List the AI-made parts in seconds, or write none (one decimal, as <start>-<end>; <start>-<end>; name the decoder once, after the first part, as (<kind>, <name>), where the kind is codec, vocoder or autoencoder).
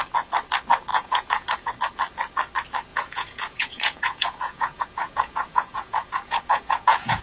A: 0.9-1.7 (vocoder, Vocos); 2.9-7.2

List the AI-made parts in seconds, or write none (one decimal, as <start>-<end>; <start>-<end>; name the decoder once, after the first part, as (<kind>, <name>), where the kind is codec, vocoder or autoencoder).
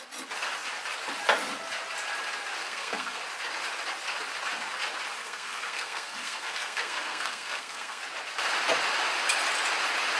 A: 2.6-3.2 (codec, SNAC); 5.2-8.0